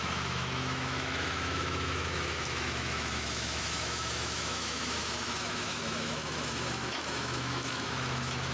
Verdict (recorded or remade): remade